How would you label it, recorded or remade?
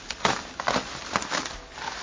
recorded